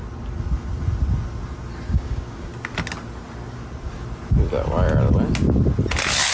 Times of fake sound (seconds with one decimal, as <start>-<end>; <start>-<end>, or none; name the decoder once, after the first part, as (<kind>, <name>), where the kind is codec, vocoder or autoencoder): 1.9-2.5 (codec, DAC)